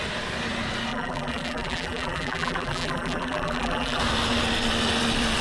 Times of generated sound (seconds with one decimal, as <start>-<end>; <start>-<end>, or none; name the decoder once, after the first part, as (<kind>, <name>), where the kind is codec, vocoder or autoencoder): 0.9-4.0 (vocoder, BigVGAN v2)